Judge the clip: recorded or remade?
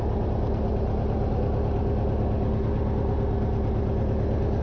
recorded